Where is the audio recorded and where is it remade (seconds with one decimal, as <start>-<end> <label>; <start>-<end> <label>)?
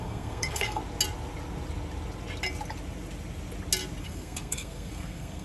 0.0-0.8 remade; 0.8-4.0 recorded; 4.0-5.4 remade